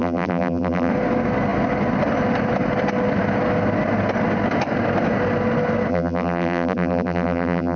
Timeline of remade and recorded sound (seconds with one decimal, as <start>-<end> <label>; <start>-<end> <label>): 0.0-0.9 remade; 0.9-5.9 recorded; 5.9-7.8 remade